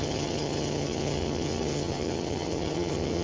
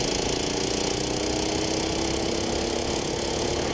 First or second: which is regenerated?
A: first